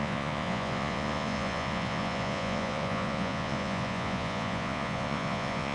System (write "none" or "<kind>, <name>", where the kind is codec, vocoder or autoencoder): vocoder, Vocos